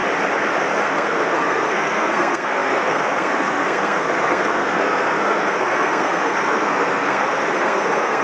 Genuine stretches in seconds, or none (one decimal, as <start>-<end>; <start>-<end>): 0.0-0.6

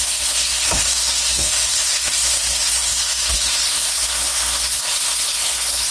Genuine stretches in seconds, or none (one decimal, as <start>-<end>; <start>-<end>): none

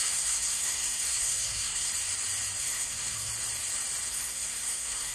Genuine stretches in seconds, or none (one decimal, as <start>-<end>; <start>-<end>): 1.9-2.6; 3.3-4.1

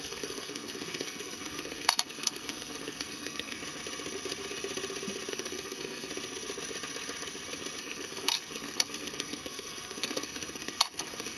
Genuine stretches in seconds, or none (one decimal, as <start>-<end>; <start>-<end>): 3.6-5.3; 6.1-7.8

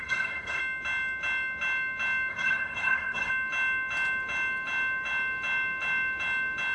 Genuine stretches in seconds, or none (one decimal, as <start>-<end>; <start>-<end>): 0.6-2.3; 3.3-6.7

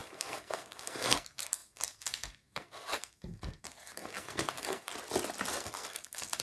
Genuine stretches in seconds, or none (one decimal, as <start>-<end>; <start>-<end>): 4.9-5.5